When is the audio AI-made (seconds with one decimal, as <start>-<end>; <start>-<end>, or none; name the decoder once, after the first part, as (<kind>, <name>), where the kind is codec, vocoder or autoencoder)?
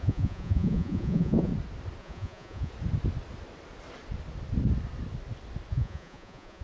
0.0-1.5 (vocoder, Vocos); 2.0-2.7; 5.7-6.6